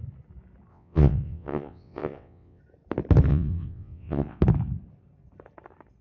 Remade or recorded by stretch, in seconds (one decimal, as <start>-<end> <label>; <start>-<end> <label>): 0.0-0.7 recorded; 0.7-2.6 remade; 2.6-3.3 recorded; 3.3-4.4 remade; 4.4-6.0 recorded